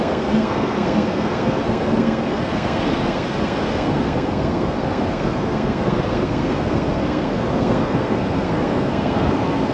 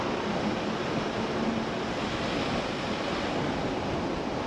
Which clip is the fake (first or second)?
first